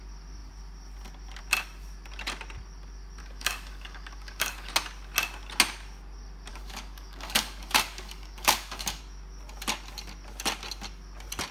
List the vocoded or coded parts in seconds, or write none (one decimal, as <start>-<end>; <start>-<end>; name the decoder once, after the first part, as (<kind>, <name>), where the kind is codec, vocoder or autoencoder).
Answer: 3.2-4.7 (codec, DAC); 6.5-9.0